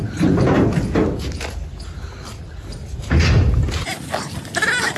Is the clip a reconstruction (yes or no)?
no